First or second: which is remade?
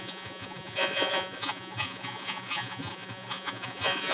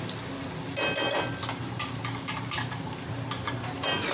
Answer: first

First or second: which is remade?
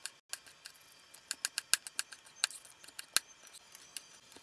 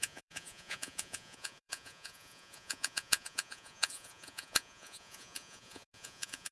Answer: second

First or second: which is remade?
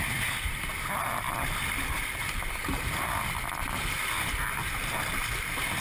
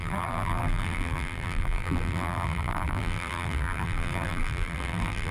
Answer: second